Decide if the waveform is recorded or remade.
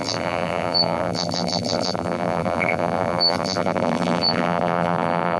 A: remade